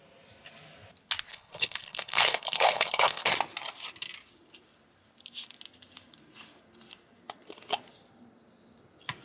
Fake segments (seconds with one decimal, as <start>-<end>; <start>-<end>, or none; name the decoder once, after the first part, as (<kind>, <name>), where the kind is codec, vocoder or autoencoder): 1.3-3.2 (codec, HILCodec)